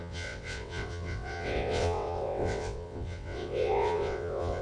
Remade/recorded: remade